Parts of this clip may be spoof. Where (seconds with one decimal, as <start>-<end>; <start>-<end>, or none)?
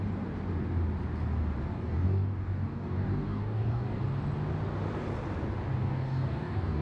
1.7-4.0; 5.8-6.8